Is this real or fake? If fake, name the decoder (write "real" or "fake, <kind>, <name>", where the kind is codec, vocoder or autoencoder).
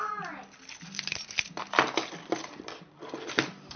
real